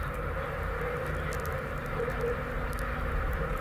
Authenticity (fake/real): real